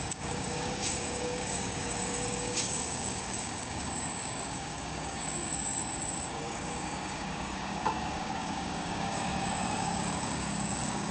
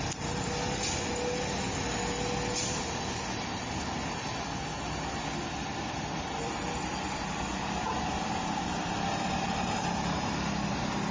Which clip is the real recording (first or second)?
second